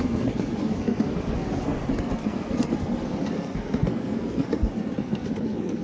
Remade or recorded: remade